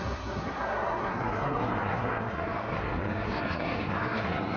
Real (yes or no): no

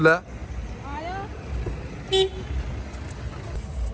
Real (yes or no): yes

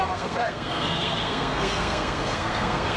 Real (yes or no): no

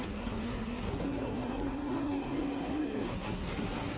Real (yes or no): no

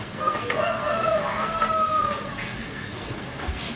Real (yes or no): no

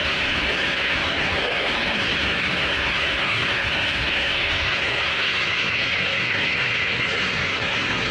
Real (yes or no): no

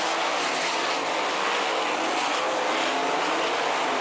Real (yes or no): yes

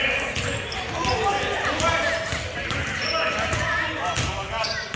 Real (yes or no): yes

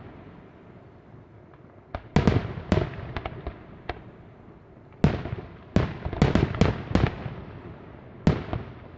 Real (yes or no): yes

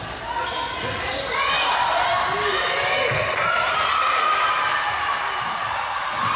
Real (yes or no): yes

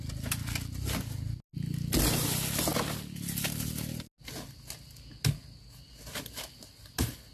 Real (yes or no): yes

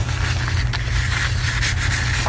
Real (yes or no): yes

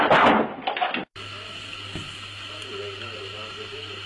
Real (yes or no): yes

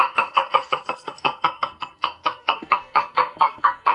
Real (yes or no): no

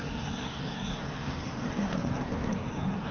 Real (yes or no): no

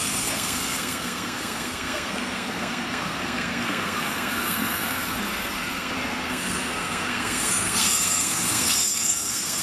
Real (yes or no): no